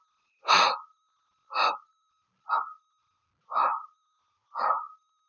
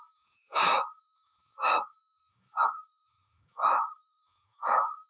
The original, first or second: first